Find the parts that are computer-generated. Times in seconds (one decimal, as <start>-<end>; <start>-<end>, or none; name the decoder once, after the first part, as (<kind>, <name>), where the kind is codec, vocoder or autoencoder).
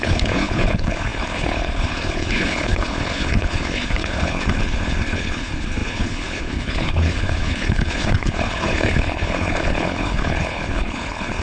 0.0-11.4 (codec, HILCodec)